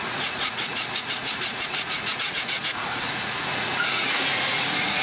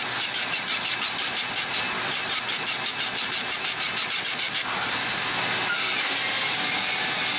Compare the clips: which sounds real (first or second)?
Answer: second